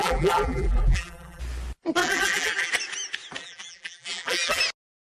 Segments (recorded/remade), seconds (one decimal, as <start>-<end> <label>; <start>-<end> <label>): 0.0-1.4 remade; 1.4-2.0 recorded; 2.0-2.7 remade; 2.7-3.4 recorded; 3.4-4.6 remade; 4.6-5.0 recorded